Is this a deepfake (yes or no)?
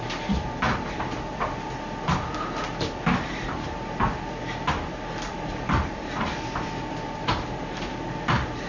yes